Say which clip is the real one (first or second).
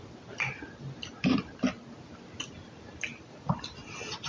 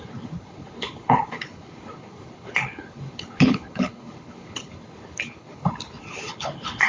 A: first